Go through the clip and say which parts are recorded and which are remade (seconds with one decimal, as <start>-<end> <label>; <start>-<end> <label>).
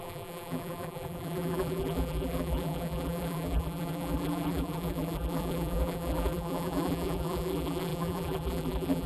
0.0-9.1 remade